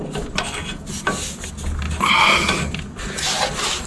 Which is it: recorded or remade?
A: recorded